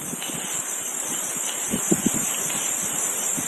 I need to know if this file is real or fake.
real